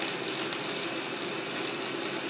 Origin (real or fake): real